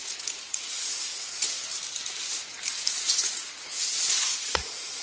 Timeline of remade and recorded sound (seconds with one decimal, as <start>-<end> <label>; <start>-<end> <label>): 0.0-1.1 remade; 1.1-2.9 recorded; 2.9-5.0 remade

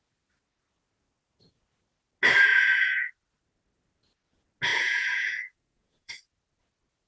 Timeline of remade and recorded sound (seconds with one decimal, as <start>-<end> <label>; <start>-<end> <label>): 0.0-2.5 recorded; 2.5-3.1 remade; 3.1-4.7 recorded; 4.7-6.1 remade; 6.1-7.1 recorded

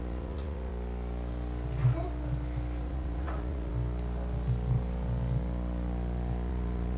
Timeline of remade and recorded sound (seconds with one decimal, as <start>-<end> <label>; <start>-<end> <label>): 0.0-0.7 remade; 0.7-2.9 recorded; 2.9-3.7 remade; 3.7-6.5 recorded; 6.5-7.0 remade

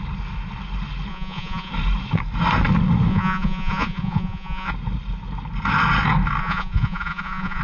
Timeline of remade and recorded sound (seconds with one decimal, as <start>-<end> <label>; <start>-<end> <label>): 0.0-1.1 recorded; 1.1-1.7 remade; 1.7-3.1 recorded; 3.1-4.7 remade; 4.7-6.4 recorded; 6.4-7.6 remade